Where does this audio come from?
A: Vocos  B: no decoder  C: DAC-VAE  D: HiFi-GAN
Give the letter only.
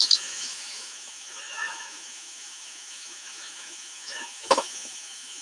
C